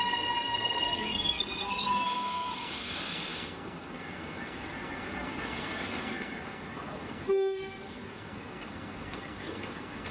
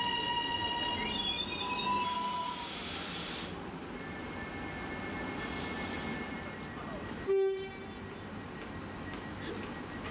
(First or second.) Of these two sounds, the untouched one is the second